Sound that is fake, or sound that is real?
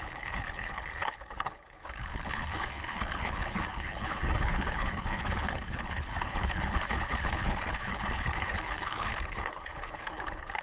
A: fake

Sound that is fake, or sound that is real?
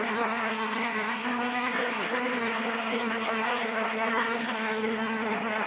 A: fake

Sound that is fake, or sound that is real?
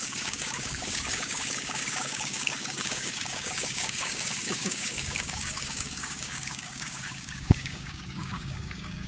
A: fake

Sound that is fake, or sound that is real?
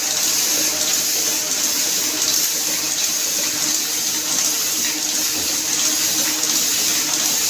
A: real